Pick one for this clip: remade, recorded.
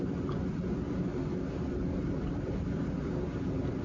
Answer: recorded